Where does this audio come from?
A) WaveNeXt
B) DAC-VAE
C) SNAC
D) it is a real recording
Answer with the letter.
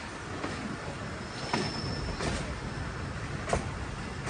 D